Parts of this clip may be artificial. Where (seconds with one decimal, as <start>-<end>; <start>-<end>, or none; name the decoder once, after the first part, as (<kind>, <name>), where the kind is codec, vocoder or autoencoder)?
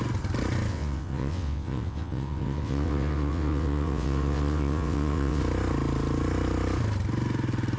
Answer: 0.7-5.4 (vocoder, WaveNeXt)